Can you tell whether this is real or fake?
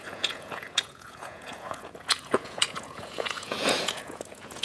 fake